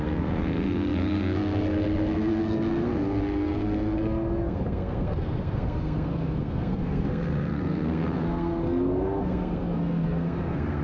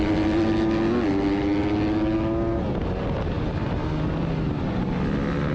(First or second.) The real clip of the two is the second